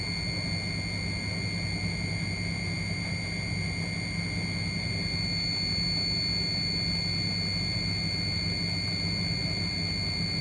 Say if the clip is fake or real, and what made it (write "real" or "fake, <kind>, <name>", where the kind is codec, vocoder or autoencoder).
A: real